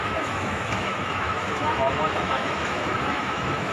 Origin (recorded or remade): remade